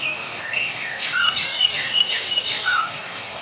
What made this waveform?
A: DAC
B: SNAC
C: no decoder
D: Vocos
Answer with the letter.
A